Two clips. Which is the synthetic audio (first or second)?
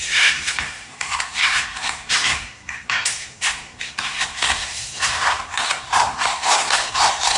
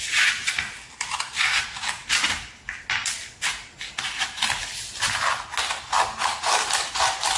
first